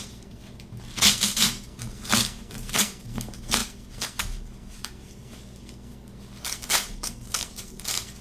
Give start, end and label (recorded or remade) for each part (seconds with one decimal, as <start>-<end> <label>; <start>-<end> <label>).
0.0-8.2 remade